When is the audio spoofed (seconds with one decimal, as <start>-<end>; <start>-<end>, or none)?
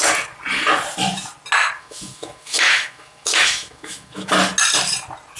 1.8-4.3